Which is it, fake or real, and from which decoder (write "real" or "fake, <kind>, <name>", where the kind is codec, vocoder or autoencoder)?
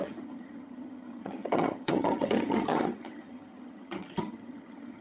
fake, vocoder, HiFi-GAN